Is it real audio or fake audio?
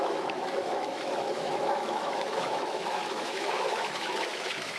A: fake